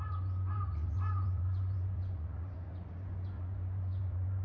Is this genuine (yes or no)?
no